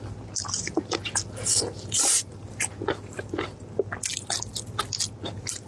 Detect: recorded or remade recorded